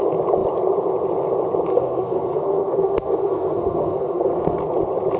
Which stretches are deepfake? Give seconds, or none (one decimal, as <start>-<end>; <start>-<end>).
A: 1.7-4.6